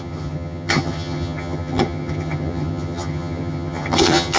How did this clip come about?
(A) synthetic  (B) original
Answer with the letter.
A